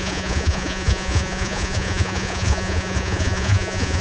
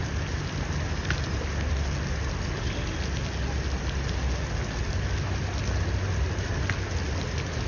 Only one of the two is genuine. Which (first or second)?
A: second